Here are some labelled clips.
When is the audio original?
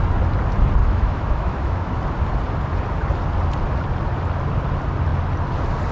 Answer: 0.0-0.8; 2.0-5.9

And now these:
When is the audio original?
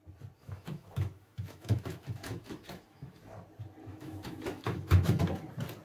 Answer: 0.0-0.4; 3.2-3.9; 5.2-5.8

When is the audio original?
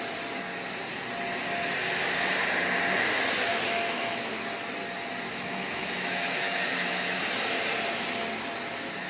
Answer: 0.0-3.5; 4.2-5.3; 7.2-9.1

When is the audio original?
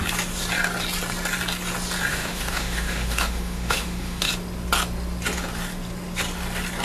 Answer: 0.0-2.1; 4.3-6.8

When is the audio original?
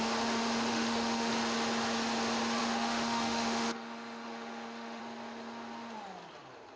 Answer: 0.0-0.7; 1.3-2.6; 5.0-6.8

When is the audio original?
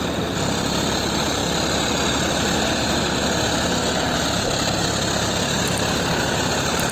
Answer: 0.0-6.9